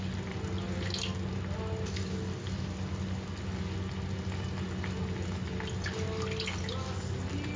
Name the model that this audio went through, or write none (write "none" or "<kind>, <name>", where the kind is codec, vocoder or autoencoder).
none